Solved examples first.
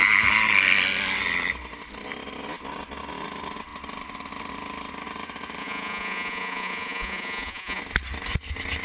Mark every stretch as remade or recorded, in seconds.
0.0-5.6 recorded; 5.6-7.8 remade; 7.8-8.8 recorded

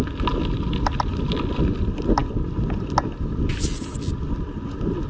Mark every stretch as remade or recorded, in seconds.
0.0-5.1 recorded

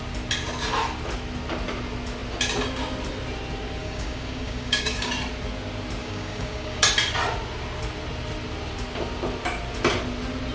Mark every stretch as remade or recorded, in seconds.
0.0-3.8 recorded; 3.8-5.1 remade; 5.1-6.0 recorded; 6.0-6.8 remade; 6.8-10.5 recorded

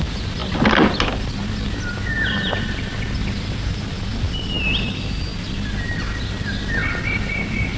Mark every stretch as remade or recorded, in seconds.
0.0-7.8 recorded

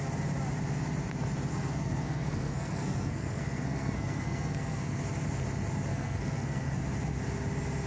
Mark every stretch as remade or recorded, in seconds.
0.0-1.5 recorded; 1.5-5.0 remade; 5.0-5.9 recorded; 5.9-6.8 remade; 6.8-7.9 recorded

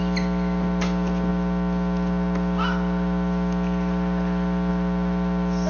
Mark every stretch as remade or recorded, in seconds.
0.0-5.7 recorded

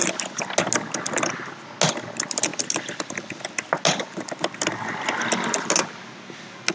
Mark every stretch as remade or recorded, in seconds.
0.0-6.7 recorded